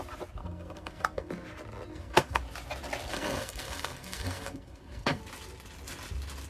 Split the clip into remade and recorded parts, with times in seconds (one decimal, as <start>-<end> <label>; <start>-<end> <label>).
0.0-0.4 recorded; 0.4-1.3 remade; 1.3-1.9 recorded; 1.9-2.4 remade; 2.4-3.1 recorded; 3.1-5.2 remade; 5.2-6.5 recorded